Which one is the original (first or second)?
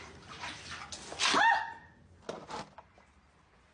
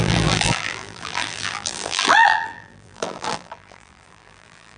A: first